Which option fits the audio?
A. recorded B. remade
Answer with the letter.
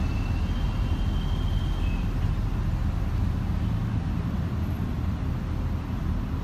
A